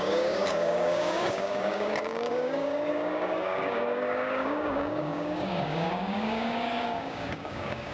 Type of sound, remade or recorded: remade